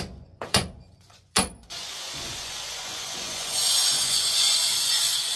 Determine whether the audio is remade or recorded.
remade